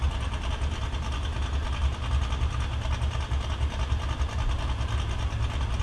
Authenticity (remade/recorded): recorded